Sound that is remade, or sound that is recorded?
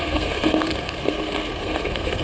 remade